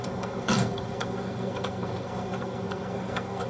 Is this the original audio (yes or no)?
no